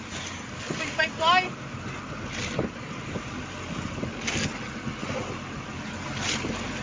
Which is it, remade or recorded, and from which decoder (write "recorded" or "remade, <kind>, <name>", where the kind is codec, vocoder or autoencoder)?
recorded